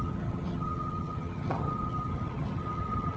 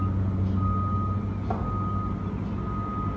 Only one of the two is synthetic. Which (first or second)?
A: first